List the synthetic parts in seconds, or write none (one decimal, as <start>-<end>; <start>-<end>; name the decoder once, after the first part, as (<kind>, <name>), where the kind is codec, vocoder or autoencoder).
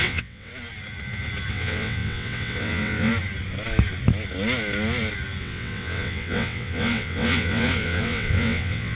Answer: 0.0-0.5 (vocoder, WaveNeXt); 1.5-3.1; 5.4-8.9